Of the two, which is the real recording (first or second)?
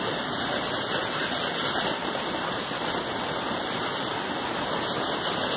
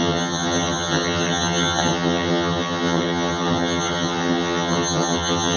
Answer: first